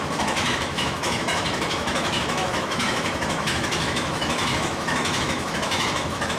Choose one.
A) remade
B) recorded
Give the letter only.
A